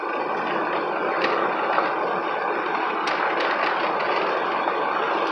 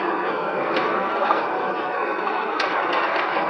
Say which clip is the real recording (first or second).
first